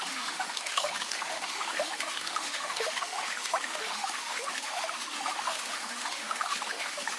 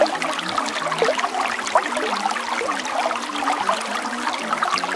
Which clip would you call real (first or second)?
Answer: second